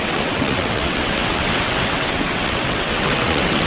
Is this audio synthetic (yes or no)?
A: yes